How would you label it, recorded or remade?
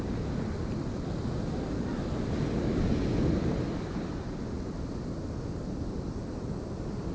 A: recorded